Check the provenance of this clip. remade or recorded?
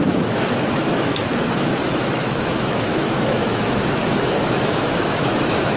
remade